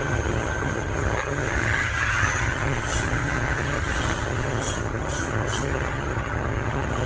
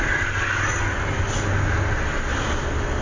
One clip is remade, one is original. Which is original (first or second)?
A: second